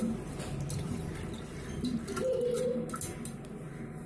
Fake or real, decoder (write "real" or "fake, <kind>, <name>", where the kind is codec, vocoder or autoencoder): real